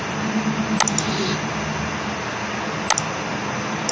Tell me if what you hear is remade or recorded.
recorded